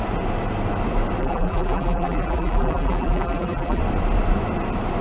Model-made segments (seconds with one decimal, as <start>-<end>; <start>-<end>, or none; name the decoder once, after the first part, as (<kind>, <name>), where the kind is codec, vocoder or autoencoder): 1.2-3.8 (vocoder, BigVGAN v2)